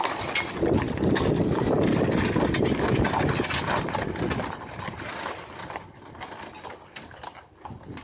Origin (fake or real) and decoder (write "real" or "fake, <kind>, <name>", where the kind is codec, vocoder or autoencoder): real